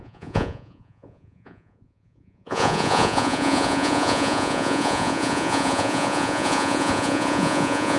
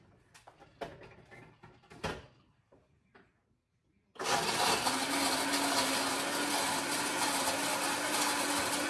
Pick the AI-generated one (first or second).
first